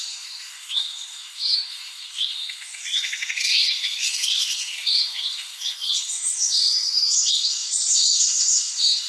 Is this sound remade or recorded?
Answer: remade